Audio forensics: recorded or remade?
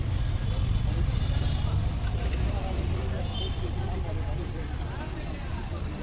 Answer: recorded